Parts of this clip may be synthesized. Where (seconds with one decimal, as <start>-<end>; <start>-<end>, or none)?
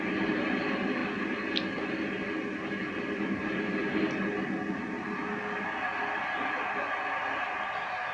none